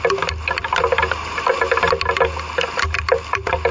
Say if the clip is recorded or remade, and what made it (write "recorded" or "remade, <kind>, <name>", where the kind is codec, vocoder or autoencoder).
recorded